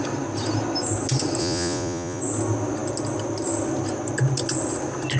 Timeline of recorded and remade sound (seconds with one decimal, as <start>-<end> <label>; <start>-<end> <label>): 0.0-1.4 recorded; 1.4-2.2 remade; 2.2-5.2 recorded

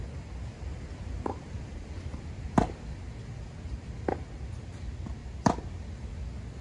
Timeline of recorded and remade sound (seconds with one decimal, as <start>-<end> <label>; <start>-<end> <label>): 0.0-6.6 recorded

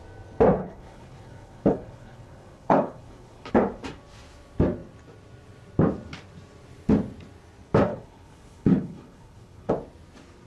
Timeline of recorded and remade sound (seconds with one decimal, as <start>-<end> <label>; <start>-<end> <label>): 0.0-0.6 recorded; 0.6-3.5 remade; 3.5-7.9 recorded; 7.9-9.7 remade; 9.7-10.5 recorded

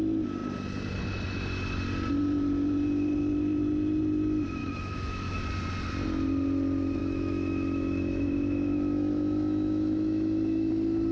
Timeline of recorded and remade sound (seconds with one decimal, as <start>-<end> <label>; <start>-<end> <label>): 0.0-4.6 recorded; 4.6-5.4 remade; 5.4-7.0 recorded; 7.0-10.7 remade; 10.7-11.1 recorded

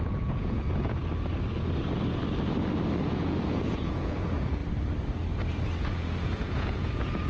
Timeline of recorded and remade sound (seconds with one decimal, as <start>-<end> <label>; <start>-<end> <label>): 0.0-1.0 remade; 1.0-3.0 recorded; 3.0-4.6 remade; 4.6-5.8 recorded; 5.8-7.3 remade